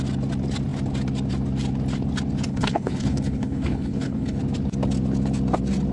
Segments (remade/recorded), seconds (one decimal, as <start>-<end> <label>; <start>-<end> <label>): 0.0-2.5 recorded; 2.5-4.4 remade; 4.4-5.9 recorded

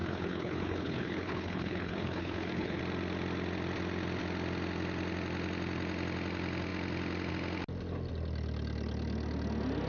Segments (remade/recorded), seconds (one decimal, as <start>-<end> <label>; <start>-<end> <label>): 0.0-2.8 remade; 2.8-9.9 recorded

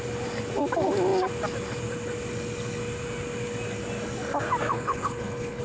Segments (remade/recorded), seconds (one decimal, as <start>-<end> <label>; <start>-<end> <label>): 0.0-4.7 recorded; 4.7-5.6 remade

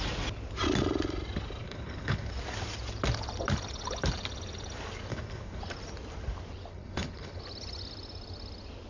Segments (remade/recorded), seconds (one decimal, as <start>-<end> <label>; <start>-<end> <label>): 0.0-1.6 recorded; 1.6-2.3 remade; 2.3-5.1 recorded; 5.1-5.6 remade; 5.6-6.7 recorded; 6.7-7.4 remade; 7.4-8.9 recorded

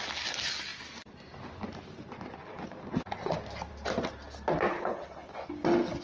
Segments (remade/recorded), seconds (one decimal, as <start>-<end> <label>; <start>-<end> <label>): 0.0-4.7 recorded; 4.7-5.3 remade; 5.3-6.0 recorded